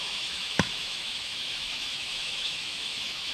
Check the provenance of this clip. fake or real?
fake